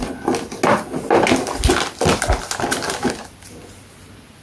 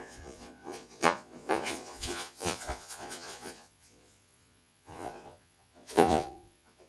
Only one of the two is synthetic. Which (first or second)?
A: second